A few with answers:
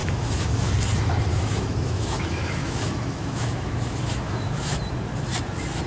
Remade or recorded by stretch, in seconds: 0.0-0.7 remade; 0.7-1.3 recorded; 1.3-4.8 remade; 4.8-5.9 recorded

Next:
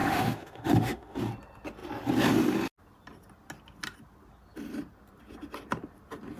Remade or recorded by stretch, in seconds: 0.0-1.2 remade; 1.2-6.4 recorded

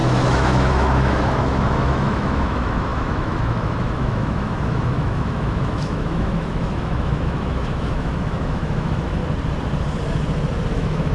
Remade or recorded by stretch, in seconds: 0.0-9.2 remade; 9.2-10.7 recorded; 10.7-11.1 remade

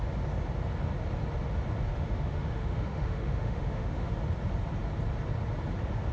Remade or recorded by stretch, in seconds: 0.0-1.9 recorded; 1.9-4.1 remade; 4.1-6.1 recorded

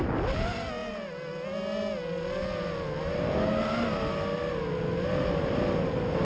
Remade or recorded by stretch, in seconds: 0.0-6.2 recorded

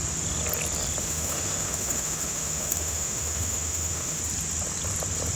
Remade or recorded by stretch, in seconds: 0.0-1.0 recorded; 1.0-4.2 remade; 4.2-5.4 recorded

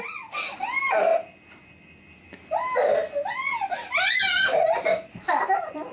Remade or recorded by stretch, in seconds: 0.0-4.9 recorded; 4.9-5.4 remade; 5.4-5.9 recorded